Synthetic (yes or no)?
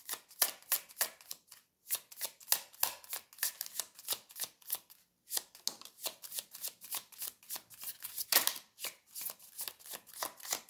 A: no